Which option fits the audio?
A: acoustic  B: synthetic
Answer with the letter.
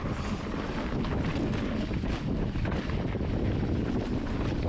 A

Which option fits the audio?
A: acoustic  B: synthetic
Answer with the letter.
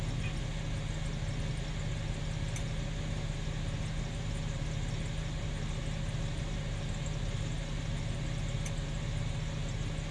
A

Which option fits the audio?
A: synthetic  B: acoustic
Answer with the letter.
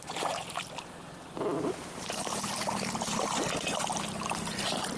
B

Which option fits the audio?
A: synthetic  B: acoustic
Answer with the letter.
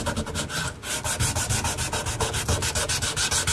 B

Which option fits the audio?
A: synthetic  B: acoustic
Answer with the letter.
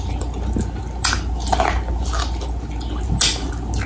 B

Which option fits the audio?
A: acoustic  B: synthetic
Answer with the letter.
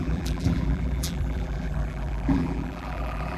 B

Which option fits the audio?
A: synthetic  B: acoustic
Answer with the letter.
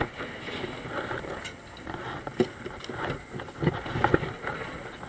B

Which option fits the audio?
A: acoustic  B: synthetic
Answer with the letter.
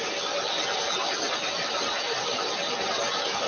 A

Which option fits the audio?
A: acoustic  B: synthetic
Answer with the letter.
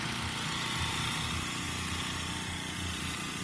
A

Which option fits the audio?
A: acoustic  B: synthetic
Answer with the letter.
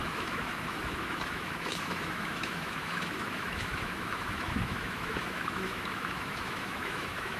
B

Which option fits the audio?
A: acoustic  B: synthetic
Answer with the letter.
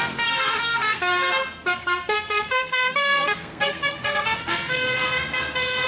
B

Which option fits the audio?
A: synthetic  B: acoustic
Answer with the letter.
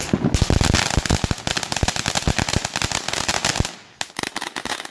B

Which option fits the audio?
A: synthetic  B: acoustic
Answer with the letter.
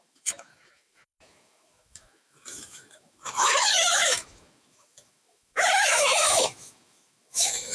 A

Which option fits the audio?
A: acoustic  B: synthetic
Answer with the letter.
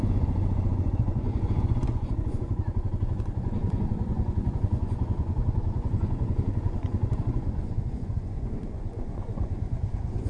B